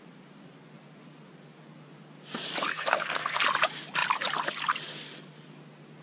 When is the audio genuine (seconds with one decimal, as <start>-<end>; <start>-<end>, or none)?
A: 0.0-2.7; 3.4-6.0